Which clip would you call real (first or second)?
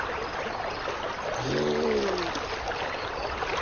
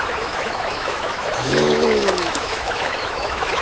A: first